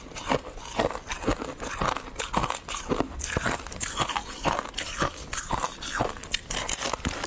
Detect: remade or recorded recorded